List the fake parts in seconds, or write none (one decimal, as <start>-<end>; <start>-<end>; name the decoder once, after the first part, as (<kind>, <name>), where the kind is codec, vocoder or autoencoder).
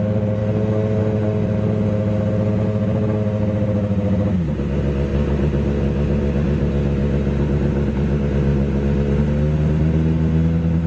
none